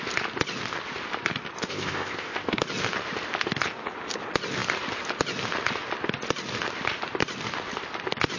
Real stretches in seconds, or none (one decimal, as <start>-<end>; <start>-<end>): 0.0-1.6; 2.6-8.4